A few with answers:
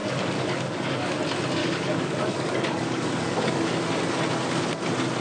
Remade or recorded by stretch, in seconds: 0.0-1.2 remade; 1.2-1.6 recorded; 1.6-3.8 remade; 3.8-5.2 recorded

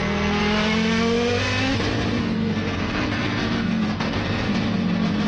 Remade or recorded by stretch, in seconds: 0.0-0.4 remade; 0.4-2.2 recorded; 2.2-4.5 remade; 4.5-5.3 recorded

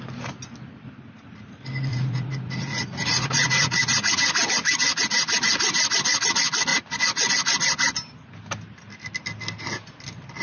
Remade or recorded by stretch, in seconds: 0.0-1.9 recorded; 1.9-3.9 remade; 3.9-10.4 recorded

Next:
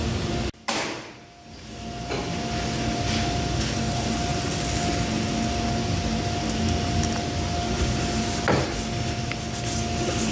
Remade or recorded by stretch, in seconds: 0.0-10.3 recorded

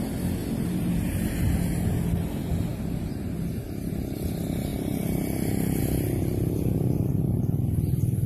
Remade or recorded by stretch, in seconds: 0.0-0.4 recorded; 0.4-1.4 remade; 1.4-2.7 recorded; 2.7-3.9 remade; 3.9-8.3 recorded

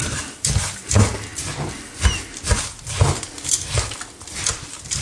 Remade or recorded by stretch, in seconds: 0.0-1.3 remade; 1.3-4.3 recorded; 4.3-5.0 remade

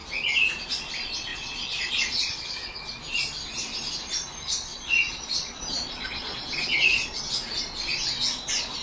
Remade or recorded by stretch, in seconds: 0.0-0.9 remade; 0.9-1.3 recorded; 1.3-3.0 remade; 3.0-4.7 recorded; 4.7-7.2 remade; 7.2-8.8 recorded